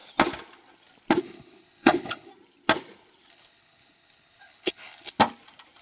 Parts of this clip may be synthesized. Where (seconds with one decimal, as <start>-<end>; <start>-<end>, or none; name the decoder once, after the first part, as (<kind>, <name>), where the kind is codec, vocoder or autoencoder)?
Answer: 1.2-2.3 (codec, HILCodec); 3.3-5.1